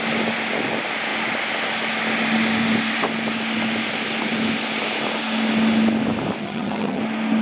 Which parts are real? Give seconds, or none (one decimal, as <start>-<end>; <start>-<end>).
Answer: 0.0-6.4; 7.0-7.4